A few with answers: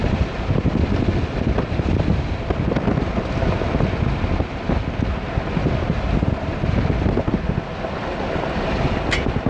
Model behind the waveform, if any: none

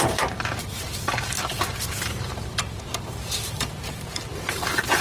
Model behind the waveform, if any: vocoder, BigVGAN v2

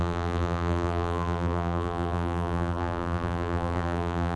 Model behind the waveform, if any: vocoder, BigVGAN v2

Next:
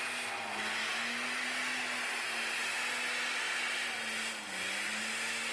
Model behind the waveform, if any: none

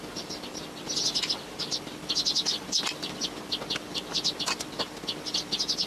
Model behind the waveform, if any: none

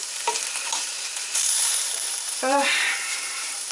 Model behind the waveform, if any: vocoder, BigVGAN v2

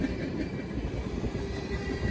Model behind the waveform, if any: none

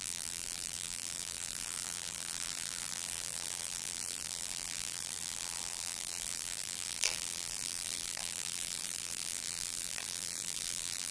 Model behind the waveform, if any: vocoder, BigVGAN v2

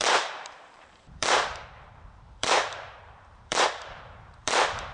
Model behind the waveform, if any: vocoder, BigVGAN v2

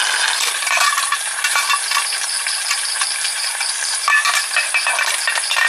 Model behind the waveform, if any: vocoder, BigVGAN v2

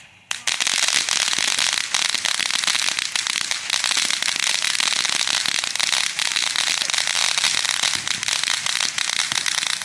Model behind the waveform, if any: none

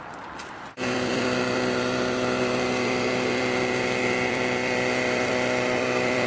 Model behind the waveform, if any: vocoder, BigVGAN v2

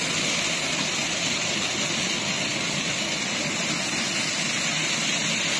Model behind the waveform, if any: none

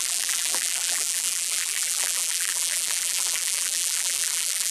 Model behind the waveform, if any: vocoder, BigVGAN v2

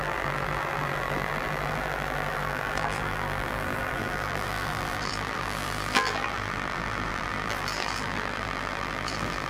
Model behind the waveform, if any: vocoder, BigVGAN v2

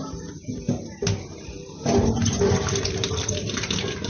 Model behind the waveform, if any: vocoder, BigVGAN v2